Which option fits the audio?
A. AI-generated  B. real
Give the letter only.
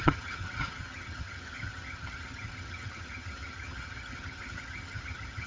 A